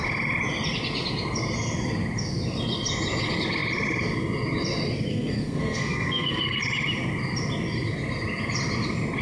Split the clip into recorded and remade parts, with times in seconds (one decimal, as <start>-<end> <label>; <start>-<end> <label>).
0.0-5.1 recorded; 5.1-6.6 remade; 6.6-9.2 recorded